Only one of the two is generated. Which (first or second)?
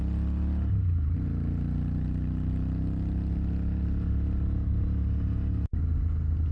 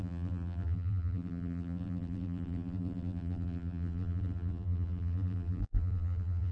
second